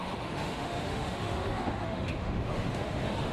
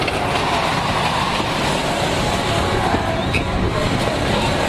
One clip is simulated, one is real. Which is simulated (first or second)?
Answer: first